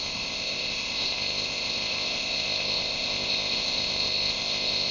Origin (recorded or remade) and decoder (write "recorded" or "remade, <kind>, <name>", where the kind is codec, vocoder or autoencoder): remade, codec, ZipCodec